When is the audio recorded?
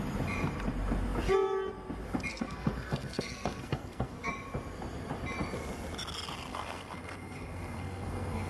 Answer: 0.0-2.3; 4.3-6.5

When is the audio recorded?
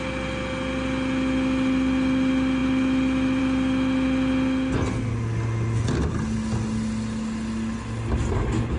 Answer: 0.0-8.8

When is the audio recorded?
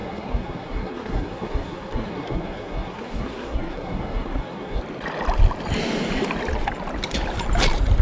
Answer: 4.8-8.0